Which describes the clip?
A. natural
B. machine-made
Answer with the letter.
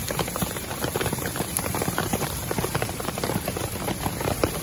B